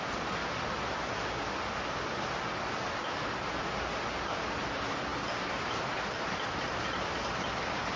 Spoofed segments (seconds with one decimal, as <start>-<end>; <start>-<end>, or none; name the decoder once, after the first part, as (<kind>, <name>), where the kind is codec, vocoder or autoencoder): 0.0-8.0 (vocoder, BigVGAN v2)